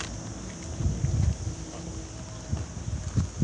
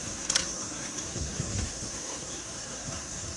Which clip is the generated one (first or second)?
second